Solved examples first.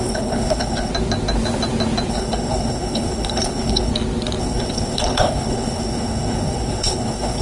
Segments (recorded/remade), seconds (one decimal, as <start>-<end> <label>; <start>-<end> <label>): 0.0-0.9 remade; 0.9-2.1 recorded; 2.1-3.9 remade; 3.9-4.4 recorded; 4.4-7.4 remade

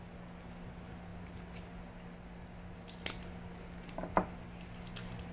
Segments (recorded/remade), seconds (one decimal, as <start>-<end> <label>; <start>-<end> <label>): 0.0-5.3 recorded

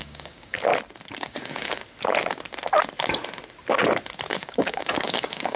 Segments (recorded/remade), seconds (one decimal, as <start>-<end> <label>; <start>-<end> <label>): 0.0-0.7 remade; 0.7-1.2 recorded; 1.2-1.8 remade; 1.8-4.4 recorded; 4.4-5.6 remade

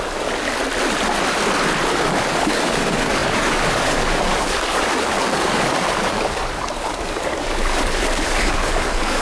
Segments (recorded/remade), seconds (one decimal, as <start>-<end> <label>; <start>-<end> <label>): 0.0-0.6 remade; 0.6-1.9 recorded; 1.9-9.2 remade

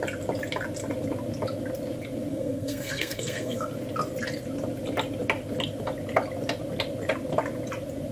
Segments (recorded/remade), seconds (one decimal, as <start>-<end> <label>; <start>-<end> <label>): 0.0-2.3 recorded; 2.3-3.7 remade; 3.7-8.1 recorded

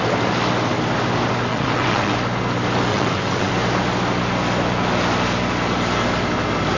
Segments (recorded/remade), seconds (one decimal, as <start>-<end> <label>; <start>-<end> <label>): 0.0-1.5 recorded; 1.5-2.1 remade; 2.1-2.9 recorded; 2.9-3.5 remade; 3.5-6.8 recorded

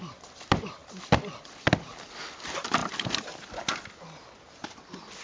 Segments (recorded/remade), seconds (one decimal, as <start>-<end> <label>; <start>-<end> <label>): 0.0-5.2 recorded

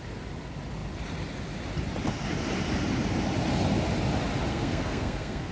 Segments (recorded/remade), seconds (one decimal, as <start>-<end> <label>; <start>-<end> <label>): 0.0-4.5 recorded; 4.5-5.5 remade